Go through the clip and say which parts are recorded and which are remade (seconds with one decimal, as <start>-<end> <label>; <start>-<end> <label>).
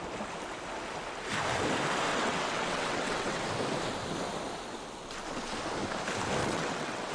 0.0-2.1 recorded; 2.1-3.4 remade; 3.4-6.4 recorded; 6.4-7.1 remade